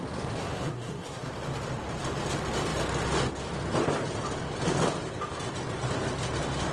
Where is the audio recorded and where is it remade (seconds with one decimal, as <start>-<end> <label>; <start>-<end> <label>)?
0.0-0.4 recorded; 0.4-1.3 remade; 1.3-6.7 recorded